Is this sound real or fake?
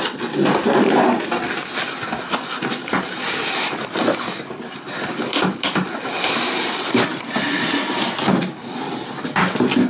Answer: real